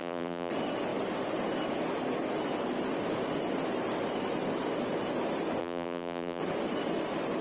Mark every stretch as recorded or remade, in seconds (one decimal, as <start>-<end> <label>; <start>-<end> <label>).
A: 0.0-0.5 remade; 0.5-5.6 recorded; 5.6-6.4 remade; 6.4-7.4 recorded